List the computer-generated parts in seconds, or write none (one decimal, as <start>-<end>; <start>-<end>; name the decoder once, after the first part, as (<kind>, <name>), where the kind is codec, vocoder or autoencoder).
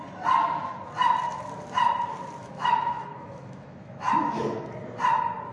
2.4-4.4 (autoencoder, DAC-VAE)